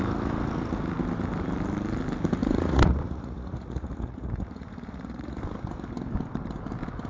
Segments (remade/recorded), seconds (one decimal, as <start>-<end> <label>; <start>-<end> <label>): 0.0-2.4 recorded; 2.4-5.4 remade; 5.4-7.1 recorded